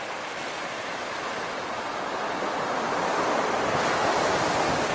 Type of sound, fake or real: real